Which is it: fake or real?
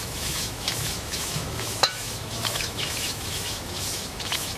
fake